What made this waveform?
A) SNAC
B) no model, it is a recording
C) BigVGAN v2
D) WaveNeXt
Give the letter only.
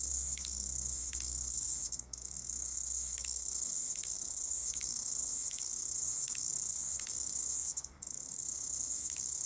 A